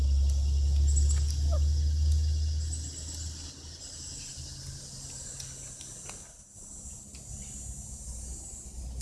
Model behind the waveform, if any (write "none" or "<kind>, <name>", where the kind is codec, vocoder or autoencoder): none